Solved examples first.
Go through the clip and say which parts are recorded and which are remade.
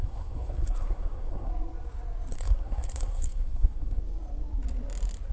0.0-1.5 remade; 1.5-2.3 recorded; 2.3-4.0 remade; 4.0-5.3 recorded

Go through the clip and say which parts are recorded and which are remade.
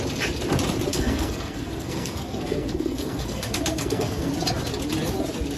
0.0-0.9 recorded; 0.9-4.3 remade; 4.3-5.6 recorded